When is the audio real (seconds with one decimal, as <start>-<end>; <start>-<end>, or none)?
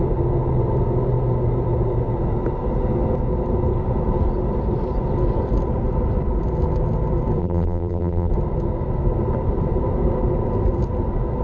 0.0-7.4; 8.3-11.4